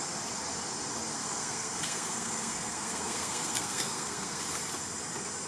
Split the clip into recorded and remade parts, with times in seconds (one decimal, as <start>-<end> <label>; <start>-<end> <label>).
0.0-1.1 recorded; 1.1-4.4 remade; 4.4-5.5 recorded